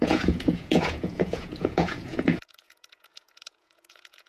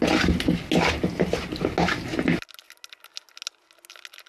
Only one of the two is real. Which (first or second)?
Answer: second